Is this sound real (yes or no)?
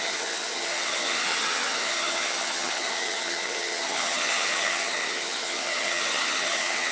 no